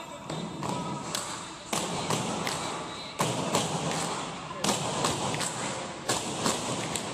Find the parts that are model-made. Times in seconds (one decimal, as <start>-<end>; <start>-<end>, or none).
none